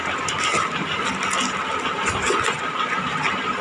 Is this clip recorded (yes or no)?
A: yes